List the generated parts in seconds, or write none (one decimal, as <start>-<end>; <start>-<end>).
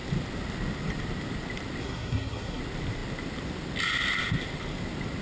1.8-2.6